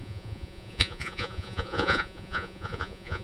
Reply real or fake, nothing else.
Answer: fake